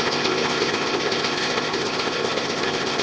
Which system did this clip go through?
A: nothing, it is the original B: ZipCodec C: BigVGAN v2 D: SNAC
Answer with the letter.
B